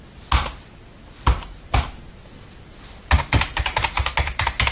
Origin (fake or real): real